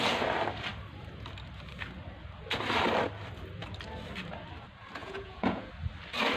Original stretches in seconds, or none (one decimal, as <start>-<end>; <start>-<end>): 0.0-5.0; 5.7-6.4